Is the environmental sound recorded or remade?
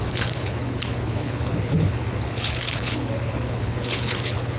remade